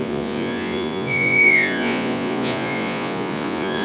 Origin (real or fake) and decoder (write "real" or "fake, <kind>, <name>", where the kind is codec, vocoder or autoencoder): fake, vocoder, Vocos